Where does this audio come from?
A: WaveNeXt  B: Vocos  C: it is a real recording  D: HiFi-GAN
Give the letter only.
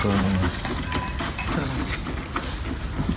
C